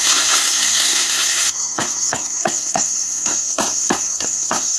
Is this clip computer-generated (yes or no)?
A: yes